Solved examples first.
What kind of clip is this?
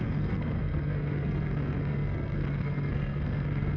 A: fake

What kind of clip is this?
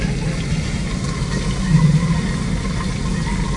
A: real